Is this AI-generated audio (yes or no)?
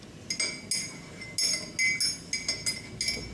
no